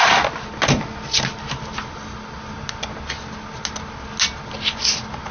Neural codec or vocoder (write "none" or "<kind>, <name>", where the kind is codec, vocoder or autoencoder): none